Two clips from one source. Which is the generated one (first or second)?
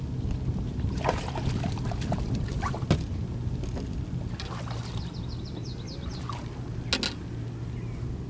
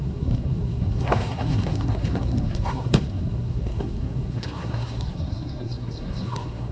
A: second